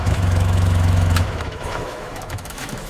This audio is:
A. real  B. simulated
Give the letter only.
B